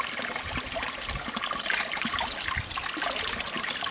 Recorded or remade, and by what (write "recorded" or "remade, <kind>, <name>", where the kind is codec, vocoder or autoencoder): recorded